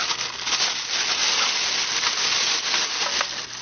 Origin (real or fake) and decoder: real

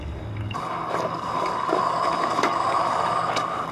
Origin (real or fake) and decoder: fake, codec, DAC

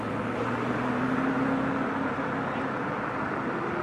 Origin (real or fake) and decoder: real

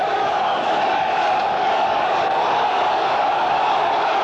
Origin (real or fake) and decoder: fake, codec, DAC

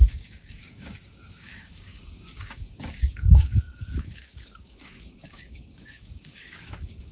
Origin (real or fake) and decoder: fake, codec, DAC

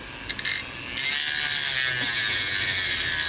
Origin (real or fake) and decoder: real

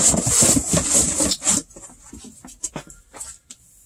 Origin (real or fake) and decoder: real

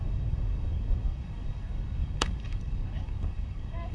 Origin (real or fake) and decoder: fake, codec, DAC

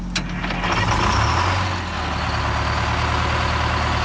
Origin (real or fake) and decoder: real